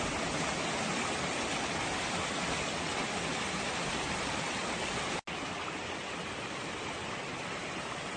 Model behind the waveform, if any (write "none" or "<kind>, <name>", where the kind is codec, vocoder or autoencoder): none